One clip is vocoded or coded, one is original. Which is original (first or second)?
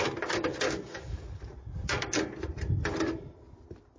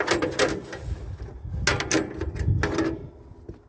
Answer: second